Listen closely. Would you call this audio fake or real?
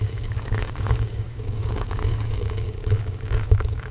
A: fake